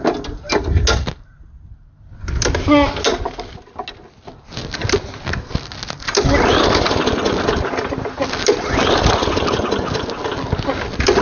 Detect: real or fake real